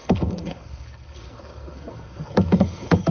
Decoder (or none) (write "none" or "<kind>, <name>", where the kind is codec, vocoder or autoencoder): codec, SNAC